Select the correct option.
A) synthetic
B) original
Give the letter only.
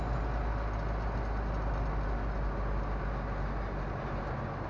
B